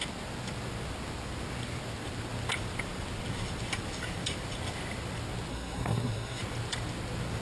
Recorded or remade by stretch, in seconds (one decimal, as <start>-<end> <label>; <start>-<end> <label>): 0.0-5.5 recorded; 5.5-6.4 remade; 6.4-7.4 recorded

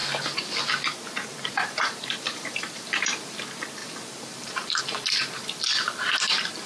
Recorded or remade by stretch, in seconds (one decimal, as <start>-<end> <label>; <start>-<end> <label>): 0.0-1.3 recorded; 1.3-3.1 remade; 3.1-3.8 recorded; 3.8-4.8 remade; 4.8-6.7 recorded